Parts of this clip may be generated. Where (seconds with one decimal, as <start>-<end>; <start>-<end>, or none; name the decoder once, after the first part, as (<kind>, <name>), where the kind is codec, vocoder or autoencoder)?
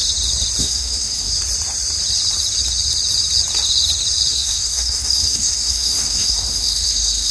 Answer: 0.6-1.3 (codec, SNAC); 4.3-7.3